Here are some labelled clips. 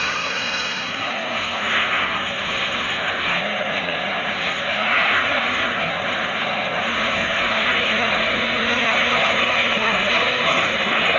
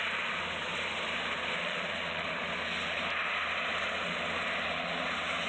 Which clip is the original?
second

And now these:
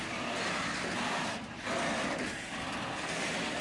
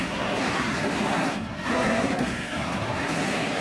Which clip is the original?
first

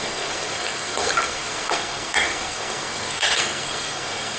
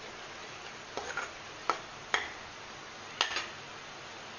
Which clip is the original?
second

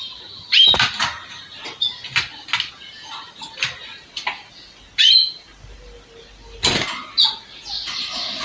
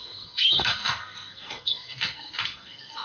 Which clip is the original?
first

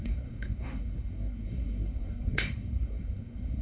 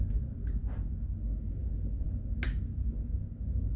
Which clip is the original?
second